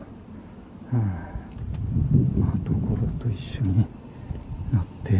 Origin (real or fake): real